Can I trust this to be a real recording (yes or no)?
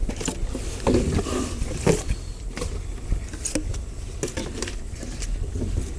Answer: yes